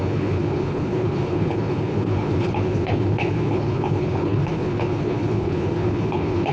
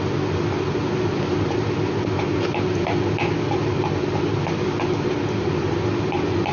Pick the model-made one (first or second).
first